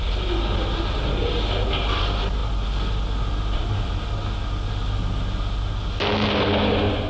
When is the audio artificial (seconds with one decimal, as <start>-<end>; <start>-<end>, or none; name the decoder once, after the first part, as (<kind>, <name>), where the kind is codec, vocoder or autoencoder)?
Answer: none